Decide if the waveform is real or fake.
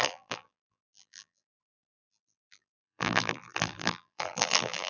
fake